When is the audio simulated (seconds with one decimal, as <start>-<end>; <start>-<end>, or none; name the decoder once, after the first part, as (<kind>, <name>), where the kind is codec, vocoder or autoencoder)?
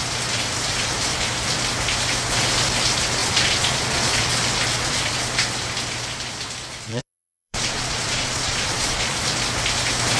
3.2-4.2 (vocoder, Vocos); 4.7-5.2; 6.9-9.2